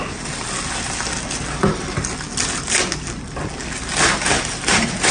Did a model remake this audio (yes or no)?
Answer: no